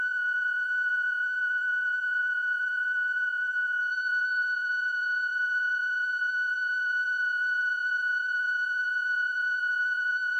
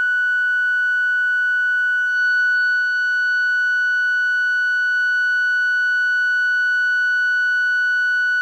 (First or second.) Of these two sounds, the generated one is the first